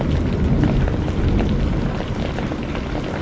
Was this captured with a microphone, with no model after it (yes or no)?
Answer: yes